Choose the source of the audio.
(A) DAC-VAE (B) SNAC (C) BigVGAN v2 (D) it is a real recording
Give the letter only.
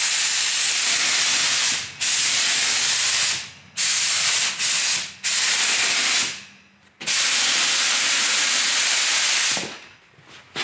D